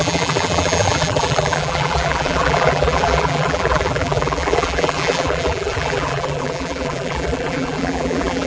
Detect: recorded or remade remade